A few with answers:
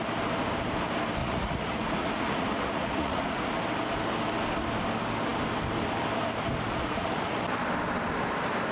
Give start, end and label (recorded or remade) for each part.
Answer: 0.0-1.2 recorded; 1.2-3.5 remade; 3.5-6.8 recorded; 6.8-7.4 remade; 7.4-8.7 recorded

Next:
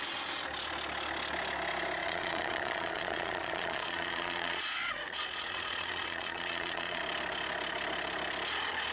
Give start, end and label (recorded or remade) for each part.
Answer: 0.0-2.0 recorded; 2.0-7.0 remade; 7.0-8.9 recorded